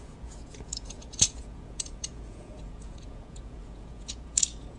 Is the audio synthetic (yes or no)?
yes